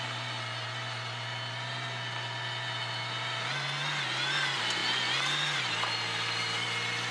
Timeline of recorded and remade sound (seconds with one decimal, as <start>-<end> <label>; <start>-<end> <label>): 0.0-7.1 recorded